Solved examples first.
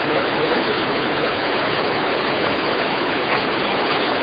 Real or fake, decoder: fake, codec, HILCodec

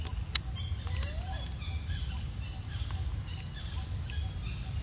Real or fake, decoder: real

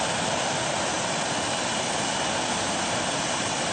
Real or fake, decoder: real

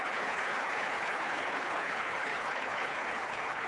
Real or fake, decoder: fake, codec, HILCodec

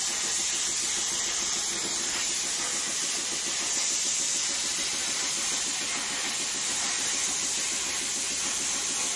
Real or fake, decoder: real